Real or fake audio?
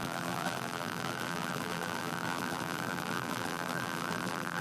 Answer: fake